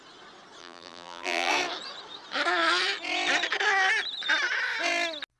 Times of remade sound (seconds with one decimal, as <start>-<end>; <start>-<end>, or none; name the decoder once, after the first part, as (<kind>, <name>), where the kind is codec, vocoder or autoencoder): 0.6-1.5 (vocoder, BigVGAN v2)